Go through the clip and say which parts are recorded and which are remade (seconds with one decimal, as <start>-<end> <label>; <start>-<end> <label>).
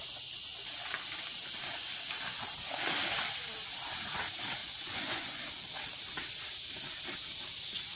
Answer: 0.0-4.6 recorded; 4.6-5.4 remade; 5.4-8.0 recorded